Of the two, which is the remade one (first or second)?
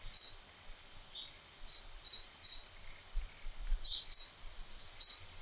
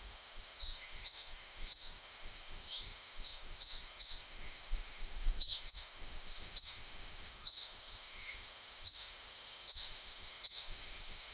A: second